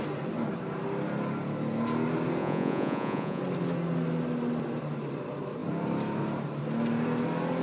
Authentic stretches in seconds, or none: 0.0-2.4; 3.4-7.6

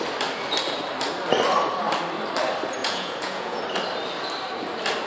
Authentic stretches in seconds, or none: 0.0-2.8; 3.6-5.1

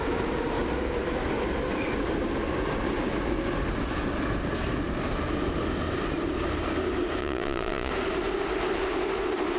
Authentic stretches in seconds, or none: 0.0-7.2; 7.9-9.6

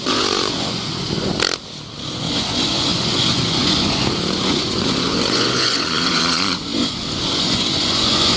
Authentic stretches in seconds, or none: 1.3-2.1